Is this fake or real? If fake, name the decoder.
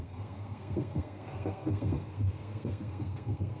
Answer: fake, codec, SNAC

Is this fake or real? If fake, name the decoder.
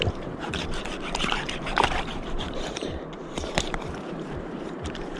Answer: fake, vocoder, BigVGAN v2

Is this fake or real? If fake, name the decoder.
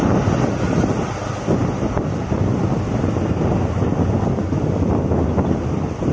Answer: real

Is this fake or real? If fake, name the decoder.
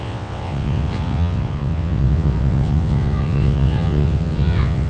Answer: fake, vocoder, WaveNeXt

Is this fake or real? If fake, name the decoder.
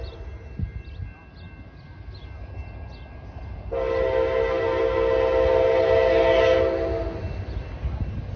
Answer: real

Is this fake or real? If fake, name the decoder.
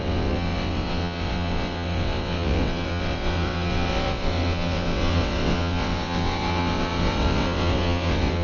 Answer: fake, vocoder, WaveNeXt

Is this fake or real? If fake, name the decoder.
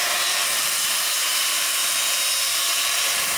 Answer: fake, vocoder, BigVGAN v2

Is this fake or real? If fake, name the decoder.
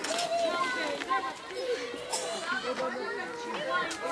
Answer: real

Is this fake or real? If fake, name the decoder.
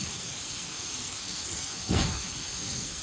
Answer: fake, codec, SNAC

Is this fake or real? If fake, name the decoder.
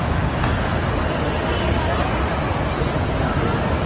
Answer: real